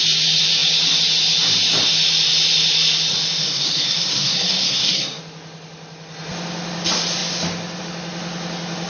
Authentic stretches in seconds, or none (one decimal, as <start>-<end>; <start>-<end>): 0.0-3.4; 5.2-8.9